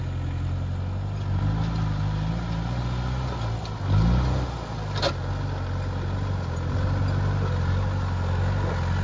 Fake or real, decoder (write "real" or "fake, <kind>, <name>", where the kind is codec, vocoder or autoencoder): real